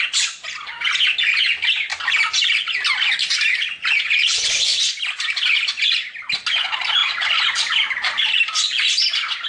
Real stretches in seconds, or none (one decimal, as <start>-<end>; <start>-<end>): 0.0-9.5